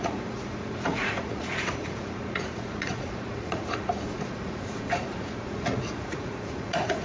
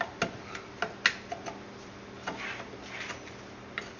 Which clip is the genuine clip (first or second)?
second